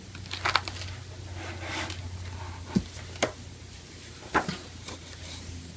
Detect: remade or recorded recorded